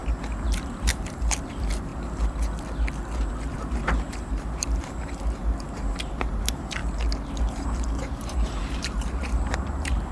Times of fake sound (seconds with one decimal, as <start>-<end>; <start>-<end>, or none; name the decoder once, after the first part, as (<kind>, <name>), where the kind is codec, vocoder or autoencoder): 0.0-1.9 (vocoder, BigVGAN v2); 3.3-6.8; 7.4-10.1